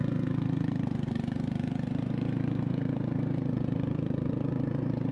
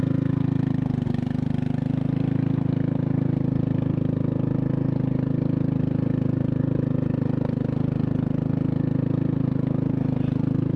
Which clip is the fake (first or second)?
first